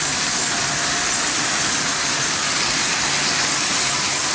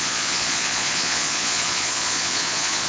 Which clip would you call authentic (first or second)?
first